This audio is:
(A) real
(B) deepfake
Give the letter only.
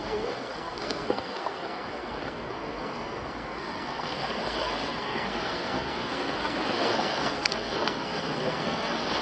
B